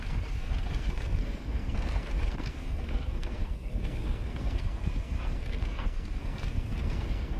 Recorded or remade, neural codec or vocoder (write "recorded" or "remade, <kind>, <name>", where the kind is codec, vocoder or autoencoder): remade, codec, SNAC